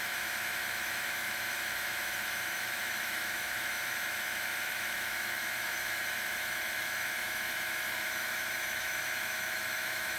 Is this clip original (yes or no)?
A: no